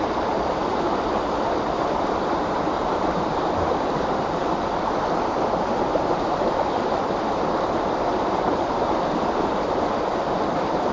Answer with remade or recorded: recorded